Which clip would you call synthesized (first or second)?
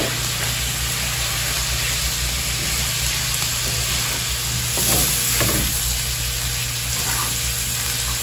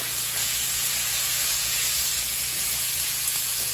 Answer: second